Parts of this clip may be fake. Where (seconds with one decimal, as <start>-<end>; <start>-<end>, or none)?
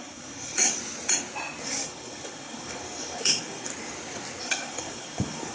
0.0-0.8; 1.6-3.7; 4.4-5.5